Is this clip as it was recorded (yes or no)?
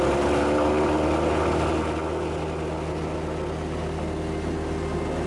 yes